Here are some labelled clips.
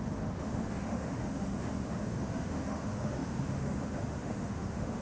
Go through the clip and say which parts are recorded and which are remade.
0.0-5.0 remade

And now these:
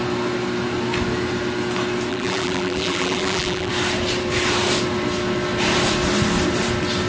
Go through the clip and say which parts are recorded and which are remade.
0.0-2.1 recorded; 2.1-3.7 remade; 3.7-7.1 recorded

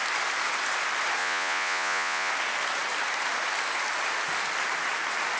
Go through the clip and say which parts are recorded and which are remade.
0.0-1.2 recorded; 1.2-2.3 remade; 2.3-5.4 recorded